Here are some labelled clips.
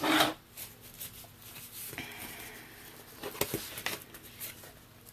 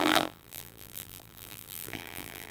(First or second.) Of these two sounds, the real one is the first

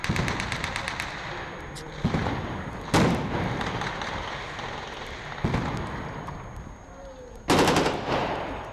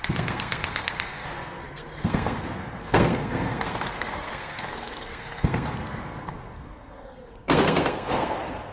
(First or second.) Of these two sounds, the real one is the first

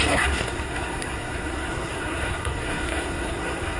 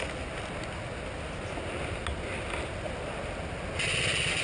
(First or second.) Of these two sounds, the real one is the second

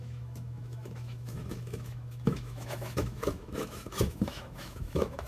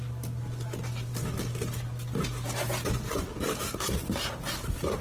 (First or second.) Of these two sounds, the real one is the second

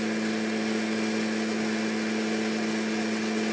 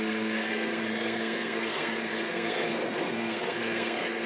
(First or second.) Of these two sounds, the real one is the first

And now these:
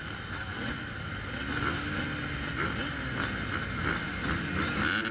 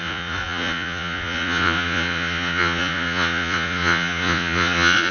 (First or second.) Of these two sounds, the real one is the first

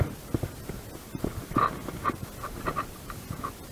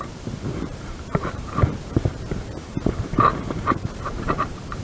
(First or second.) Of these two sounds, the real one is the first